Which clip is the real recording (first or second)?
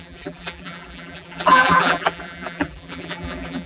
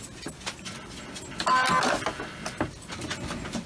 second